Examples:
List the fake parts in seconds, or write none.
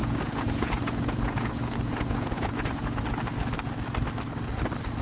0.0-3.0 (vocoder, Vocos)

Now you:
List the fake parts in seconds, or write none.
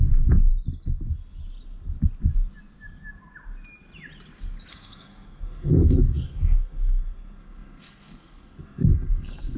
0.0-0.5 (codec, SNAC); 4.7-9.6